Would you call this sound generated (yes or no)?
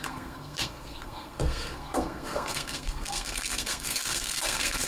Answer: yes